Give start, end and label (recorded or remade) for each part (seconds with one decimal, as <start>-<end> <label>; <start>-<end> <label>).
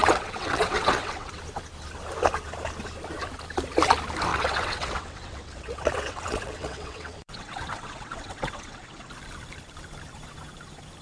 0.0-1.4 remade; 1.4-4.3 recorded; 4.3-9.1 remade; 9.1-11.0 recorded